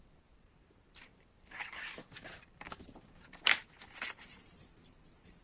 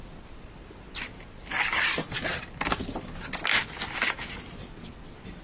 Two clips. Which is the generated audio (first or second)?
first